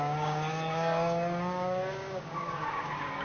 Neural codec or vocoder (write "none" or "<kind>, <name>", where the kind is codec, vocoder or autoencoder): codec, DAC